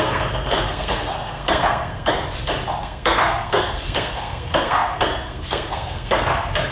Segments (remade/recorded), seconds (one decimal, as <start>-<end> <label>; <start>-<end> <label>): 0.0-2.1 remade; 2.1-2.8 recorded; 2.8-6.7 remade